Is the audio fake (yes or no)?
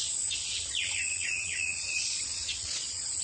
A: yes